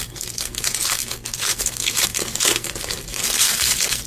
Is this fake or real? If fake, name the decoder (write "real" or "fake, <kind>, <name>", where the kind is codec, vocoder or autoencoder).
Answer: fake, codec, SNAC